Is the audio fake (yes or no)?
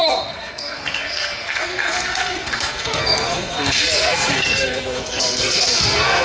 yes